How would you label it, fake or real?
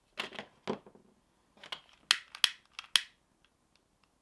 real